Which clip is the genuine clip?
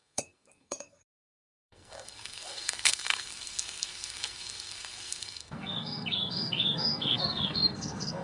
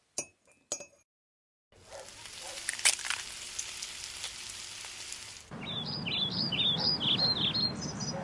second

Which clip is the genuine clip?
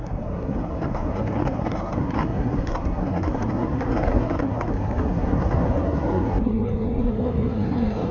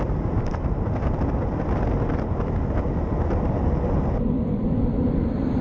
second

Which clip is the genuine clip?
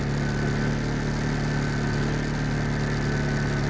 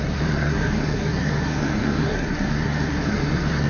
first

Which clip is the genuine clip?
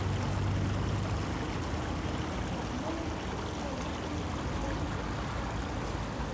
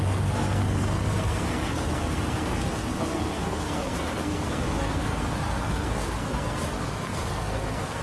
first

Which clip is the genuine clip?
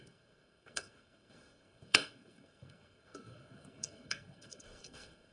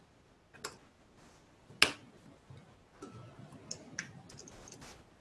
second